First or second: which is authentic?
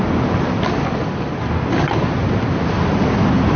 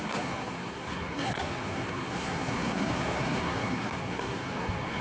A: first